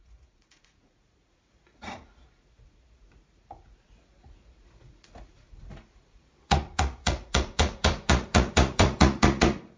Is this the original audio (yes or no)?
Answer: no